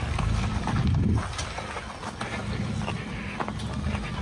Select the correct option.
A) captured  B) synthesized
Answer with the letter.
A